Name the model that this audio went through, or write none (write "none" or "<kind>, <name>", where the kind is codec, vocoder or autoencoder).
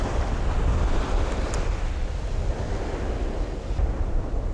none